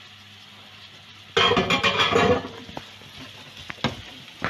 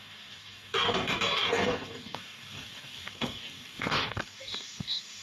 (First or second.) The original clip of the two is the first